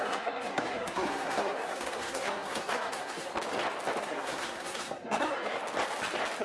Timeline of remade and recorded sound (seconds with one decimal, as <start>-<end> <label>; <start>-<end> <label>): 0.0-3.3 remade; 3.3-4.0 recorded; 4.0-5.6 remade; 5.6-6.4 recorded